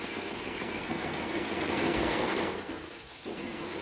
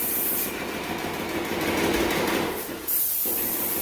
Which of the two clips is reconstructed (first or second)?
first